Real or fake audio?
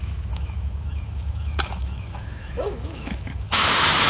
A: fake